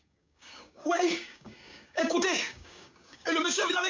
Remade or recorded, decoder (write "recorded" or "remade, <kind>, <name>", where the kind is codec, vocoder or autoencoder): remade, codec, DAC